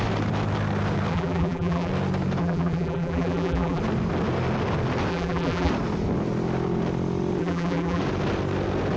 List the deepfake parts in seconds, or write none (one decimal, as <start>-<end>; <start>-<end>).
1.1-1.9; 2.4-3.8; 5.1-5.7; 7.4-8.0